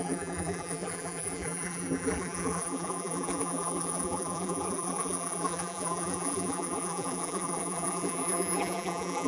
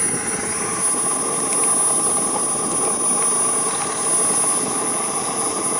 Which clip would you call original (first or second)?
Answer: second